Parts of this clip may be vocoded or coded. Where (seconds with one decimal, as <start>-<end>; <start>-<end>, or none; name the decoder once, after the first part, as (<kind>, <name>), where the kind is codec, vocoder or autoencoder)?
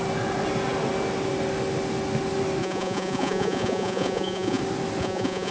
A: 2.6-4.6 (vocoder, Vocos); 5.0-5.5